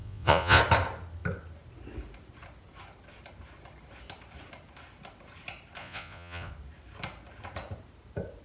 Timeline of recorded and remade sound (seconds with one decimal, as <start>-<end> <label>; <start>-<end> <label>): 0.0-0.6 remade; 0.6-5.8 recorded; 5.8-6.5 remade; 6.5-8.4 recorded

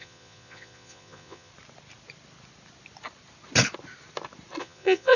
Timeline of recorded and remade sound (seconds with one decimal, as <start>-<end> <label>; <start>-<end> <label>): 0.0-1.5 remade; 1.5-4.6 recorded; 4.6-5.2 remade